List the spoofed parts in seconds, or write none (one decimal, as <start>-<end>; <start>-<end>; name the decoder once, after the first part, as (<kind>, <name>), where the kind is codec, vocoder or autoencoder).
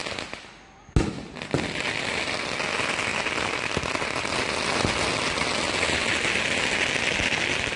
none